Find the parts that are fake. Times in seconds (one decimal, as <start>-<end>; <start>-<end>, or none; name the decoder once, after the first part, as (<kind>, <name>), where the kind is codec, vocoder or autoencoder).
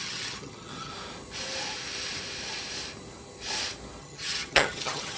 0.0-0.9 (vocoder, HiFi-GAN); 4.0-5.2